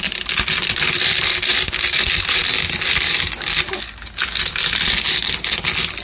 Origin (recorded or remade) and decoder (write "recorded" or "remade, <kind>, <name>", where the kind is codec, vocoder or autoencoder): recorded